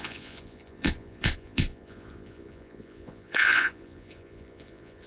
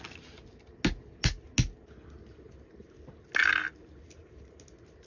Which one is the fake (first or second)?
first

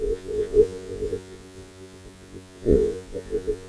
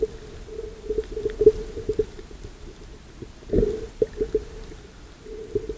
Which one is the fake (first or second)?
first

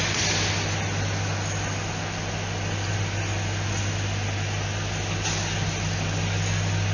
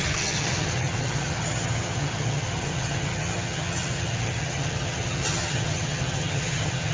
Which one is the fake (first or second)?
second